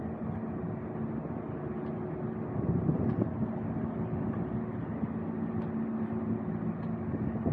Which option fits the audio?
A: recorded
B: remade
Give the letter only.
A